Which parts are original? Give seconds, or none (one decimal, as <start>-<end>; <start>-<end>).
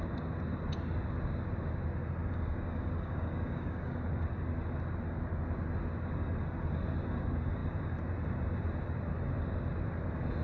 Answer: 0.0-2.2; 4.0-10.4